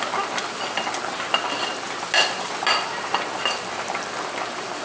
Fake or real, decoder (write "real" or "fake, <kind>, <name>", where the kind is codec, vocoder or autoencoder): real